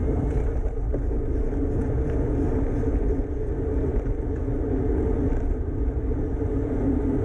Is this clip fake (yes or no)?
no